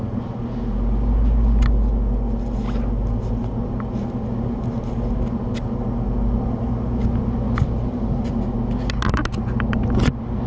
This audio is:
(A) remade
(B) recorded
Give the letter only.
B